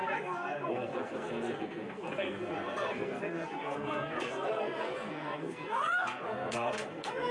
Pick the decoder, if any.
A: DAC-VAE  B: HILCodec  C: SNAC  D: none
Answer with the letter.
C